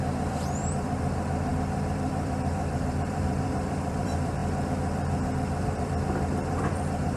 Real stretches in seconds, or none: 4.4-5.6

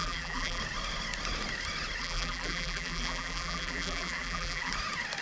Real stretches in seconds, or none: 0.6-2.0; 4.7-5.2

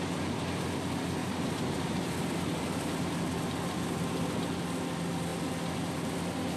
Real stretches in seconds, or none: 0.0-1.2; 2.0-2.5; 3.1-6.6

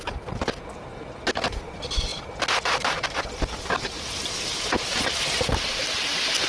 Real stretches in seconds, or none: 0.0-6.5

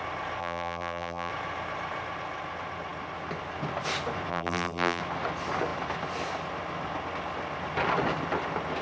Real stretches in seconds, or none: 0.0-0.4; 1.3-4.3; 5.0-8.8